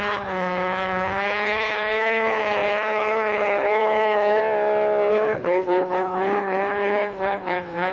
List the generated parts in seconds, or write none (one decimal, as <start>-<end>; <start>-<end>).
0.0-4.4; 5.1-7.9